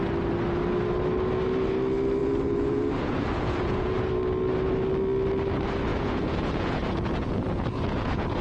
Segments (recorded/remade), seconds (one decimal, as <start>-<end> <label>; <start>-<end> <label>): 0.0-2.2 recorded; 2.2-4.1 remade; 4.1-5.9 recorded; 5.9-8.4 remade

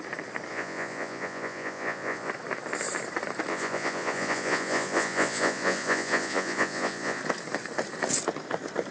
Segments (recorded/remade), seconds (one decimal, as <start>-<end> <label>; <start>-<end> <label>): 0.0-0.5 recorded; 0.5-2.3 remade; 2.3-3.5 recorded; 3.5-7.2 remade; 7.2-8.9 recorded

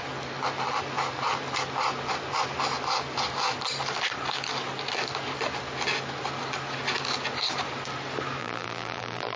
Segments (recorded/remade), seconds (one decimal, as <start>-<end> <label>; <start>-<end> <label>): 0.0-8.4 recorded; 8.4-9.4 remade

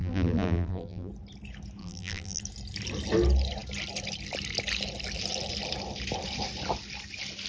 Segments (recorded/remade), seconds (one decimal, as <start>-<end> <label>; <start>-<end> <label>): 0.0-1.1 remade; 1.1-1.8 recorded; 1.8-2.4 remade; 2.4-7.5 recorded

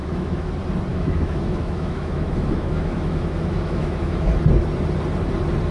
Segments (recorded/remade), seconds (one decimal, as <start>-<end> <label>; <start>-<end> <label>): 0.0-0.5 remade; 0.5-0.9 recorded; 0.9-4.3 remade; 4.3-5.7 recorded